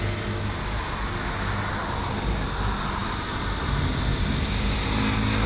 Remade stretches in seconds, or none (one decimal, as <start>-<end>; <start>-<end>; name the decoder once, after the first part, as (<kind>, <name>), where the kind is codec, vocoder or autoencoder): none